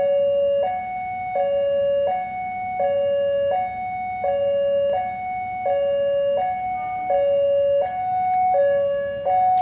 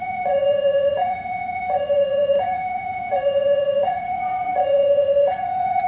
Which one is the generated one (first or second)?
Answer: second